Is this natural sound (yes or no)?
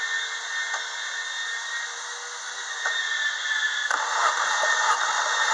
yes